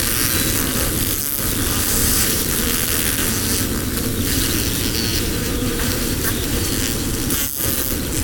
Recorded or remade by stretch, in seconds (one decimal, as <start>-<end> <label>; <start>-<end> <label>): 0.0-2.0 recorded; 2.0-2.5 remade; 2.5-5.1 recorded; 5.1-6.7 remade; 6.7-8.2 recorded

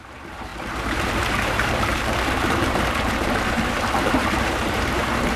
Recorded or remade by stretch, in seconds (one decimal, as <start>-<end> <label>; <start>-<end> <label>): 0.0-5.4 remade

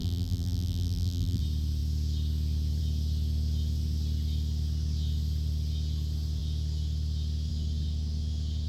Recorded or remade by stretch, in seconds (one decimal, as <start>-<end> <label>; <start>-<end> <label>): 0.0-1.4 remade; 1.4-8.7 recorded

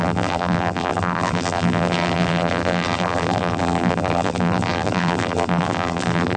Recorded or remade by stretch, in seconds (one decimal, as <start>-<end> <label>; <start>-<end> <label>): 0.0-6.4 remade

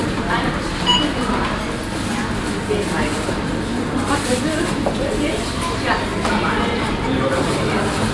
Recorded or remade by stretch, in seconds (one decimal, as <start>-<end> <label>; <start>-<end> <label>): 0.0-1.3 remade; 1.3-6.1 recorded; 6.1-6.9 remade; 6.9-8.1 recorded